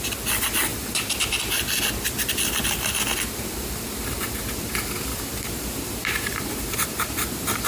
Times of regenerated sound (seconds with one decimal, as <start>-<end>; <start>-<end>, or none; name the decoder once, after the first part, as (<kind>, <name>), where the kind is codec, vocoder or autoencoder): 5.1-7.7 (vocoder, BigVGAN v2)